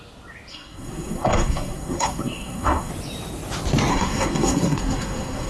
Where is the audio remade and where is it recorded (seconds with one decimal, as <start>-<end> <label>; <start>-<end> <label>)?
0.0-0.5 recorded; 0.5-2.9 remade; 2.9-3.9 recorded; 3.9-5.5 remade